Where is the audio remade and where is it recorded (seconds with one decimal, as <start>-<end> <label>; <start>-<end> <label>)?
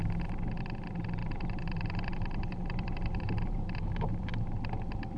0.0-1.2 recorded; 1.2-4.3 remade; 4.3-5.2 recorded